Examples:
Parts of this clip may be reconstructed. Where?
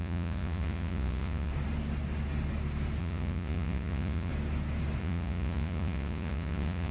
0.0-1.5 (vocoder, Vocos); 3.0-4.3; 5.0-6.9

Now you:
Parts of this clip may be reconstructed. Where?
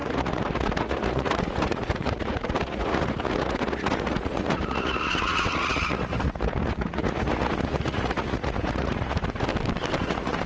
0.0-9.5 (vocoder, Vocos); 10.0-10.5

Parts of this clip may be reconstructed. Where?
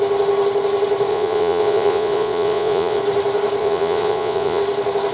1.1-3.0 (vocoder, Vocos); 3.6-4.6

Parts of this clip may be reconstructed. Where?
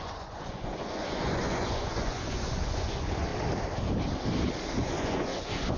0.0-3.3 (vocoder, Vocos); 4.8-5.8